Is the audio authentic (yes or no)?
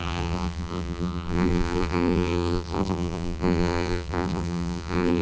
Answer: no